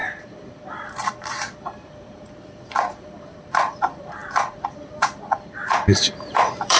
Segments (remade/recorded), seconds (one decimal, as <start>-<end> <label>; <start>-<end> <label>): 0.0-6.8 remade